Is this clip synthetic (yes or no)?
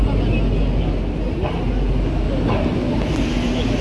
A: no